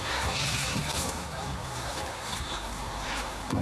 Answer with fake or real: fake